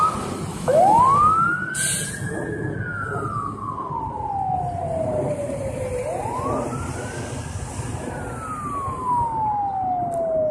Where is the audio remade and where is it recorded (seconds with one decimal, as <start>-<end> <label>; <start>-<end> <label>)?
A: 0.0-0.5 recorded; 0.5-1.0 remade; 1.0-10.5 recorded

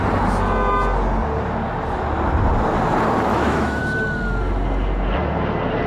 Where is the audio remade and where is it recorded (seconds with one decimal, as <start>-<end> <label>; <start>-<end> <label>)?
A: 0.0-3.3 recorded; 3.3-3.8 remade; 3.8-5.9 recorded

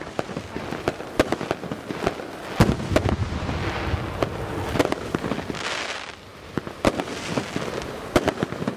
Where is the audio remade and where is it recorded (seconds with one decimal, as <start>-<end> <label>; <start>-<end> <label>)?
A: 0.0-8.8 recorded

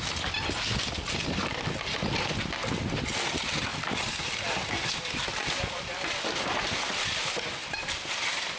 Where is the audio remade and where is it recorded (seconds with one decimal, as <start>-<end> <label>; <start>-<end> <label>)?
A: 0.0-8.6 recorded

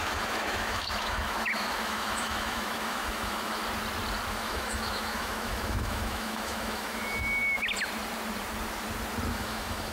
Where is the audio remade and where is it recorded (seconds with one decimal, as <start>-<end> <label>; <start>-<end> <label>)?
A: 0.0-3.6 remade; 3.6-4.3 recorded; 4.3-7.4 remade; 7.4-9.3 recorded; 9.3-9.9 remade

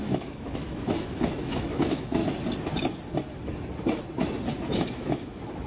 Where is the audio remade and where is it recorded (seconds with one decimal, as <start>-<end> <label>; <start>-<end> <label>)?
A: 0.0-2.2 remade; 2.2-4.5 recorded; 4.5-5.7 remade